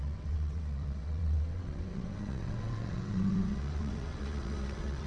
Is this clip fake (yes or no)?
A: yes